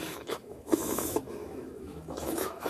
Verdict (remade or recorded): remade